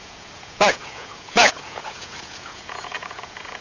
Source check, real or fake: fake